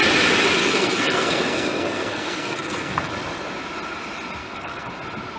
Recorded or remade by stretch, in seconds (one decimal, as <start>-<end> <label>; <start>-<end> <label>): 0.0-0.6 recorded; 0.6-3.1 remade; 3.1-4.4 recorded; 4.4-4.9 remade; 4.9-5.4 recorded